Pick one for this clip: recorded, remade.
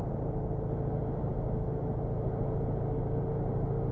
recorded